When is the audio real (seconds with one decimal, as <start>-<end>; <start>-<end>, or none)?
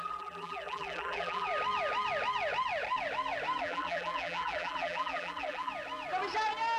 1.5-3.6; 5.7-6.8